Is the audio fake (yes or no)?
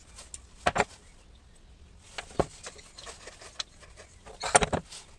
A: no